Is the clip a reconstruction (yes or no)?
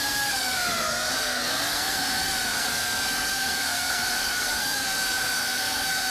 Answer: yes